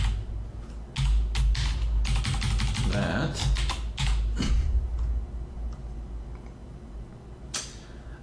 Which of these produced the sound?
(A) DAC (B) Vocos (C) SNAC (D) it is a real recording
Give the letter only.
D